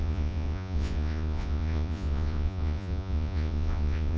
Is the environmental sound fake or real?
fake